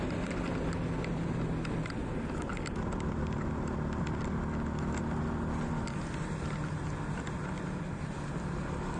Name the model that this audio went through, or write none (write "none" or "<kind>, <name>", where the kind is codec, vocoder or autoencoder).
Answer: none